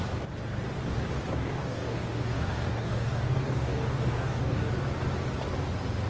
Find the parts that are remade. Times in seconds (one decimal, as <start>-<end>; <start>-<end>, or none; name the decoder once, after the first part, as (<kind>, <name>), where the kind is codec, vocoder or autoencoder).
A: 1.3-4.6 (codec, DAC)